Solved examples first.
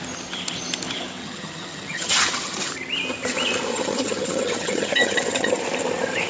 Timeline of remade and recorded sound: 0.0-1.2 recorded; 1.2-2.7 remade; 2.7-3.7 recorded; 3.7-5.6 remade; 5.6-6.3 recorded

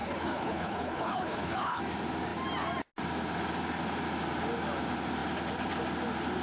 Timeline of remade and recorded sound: 0.0-1.8 remade; 1.8-6.4 recorded

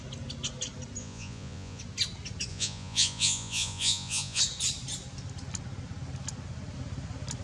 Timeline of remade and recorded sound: 0.0-1.0 recorded; 1.0-1.8 remade; 1.8-2.5 recorded; 2.5-4.4 remade; 4.4-7.4 recorded